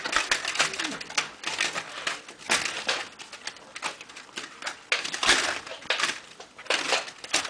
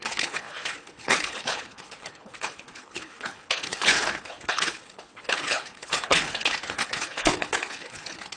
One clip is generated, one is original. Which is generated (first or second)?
second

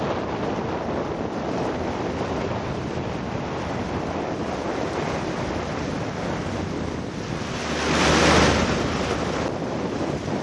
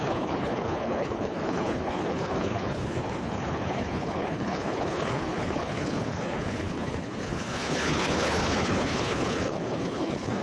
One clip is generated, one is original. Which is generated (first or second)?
second